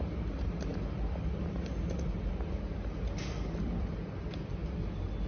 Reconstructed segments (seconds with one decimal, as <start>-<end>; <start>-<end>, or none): none